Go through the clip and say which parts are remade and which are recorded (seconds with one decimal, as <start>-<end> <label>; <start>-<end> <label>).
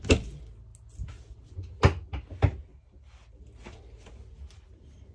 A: 0.0-5.1 recorded